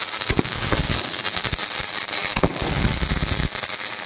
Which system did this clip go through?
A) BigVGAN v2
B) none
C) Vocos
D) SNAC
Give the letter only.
B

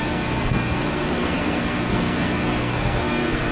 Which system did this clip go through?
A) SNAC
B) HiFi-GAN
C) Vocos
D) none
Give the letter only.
A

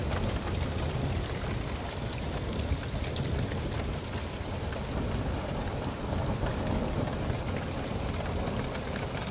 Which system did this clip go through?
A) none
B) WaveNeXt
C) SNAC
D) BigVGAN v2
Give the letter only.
A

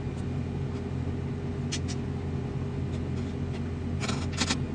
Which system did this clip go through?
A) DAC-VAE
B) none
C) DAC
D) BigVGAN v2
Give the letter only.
B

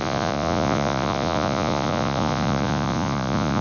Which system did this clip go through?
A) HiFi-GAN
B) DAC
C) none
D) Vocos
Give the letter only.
D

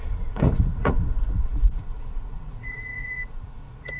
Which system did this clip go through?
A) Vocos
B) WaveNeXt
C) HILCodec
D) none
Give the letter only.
A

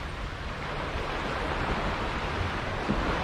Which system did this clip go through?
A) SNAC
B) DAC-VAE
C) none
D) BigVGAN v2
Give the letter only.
C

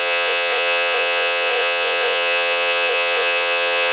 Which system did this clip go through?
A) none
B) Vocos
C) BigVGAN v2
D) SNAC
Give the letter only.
B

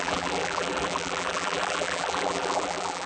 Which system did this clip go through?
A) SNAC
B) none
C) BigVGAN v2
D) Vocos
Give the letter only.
C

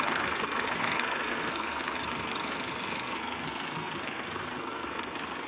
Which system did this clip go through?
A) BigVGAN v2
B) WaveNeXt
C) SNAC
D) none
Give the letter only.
C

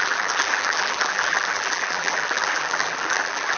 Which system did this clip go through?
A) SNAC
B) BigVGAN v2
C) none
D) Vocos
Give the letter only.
B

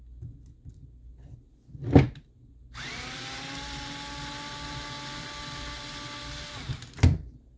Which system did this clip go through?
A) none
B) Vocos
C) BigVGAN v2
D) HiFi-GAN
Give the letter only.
A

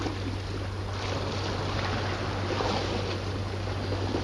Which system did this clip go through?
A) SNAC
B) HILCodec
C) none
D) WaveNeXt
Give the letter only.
C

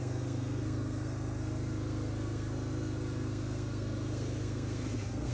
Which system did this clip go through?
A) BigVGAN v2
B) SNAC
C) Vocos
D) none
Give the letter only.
B